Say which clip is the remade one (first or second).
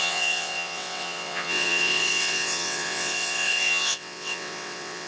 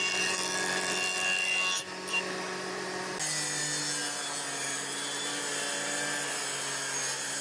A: first